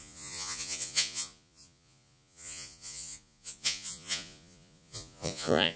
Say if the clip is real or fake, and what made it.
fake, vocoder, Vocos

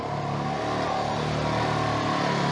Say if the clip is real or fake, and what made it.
real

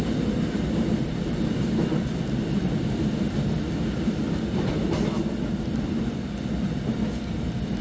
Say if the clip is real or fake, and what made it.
real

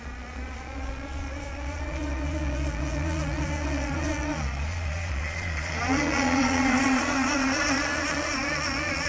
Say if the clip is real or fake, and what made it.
fake, vocoder, Vocos